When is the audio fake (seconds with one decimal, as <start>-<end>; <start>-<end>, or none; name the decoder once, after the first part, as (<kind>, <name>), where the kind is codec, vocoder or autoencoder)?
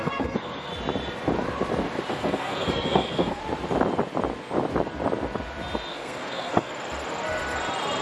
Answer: 0.0-0.7 (codec, SNAC); 2.1-3.4; 5.9-6.7